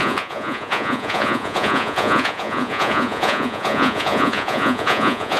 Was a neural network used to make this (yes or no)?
yes